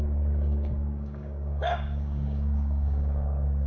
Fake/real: fake